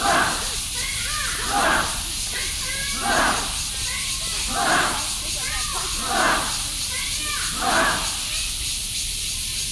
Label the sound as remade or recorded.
recorded